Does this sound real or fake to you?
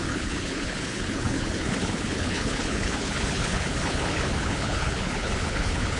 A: fake